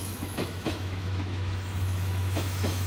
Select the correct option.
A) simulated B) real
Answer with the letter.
A